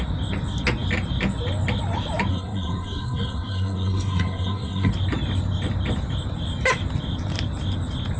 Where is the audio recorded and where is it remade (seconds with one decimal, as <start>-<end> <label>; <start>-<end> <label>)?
0.0-2.3 recorded; 2.3-4.9 remade; 4.9-8.2 recorded